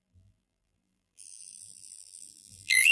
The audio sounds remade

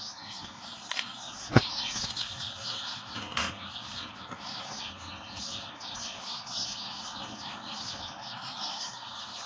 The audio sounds remade